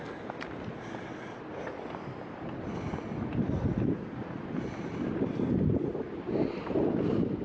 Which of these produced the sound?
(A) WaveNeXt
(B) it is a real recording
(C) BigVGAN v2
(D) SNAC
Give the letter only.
B